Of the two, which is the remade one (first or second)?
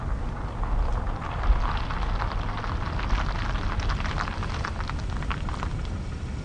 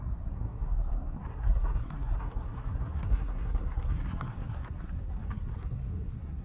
second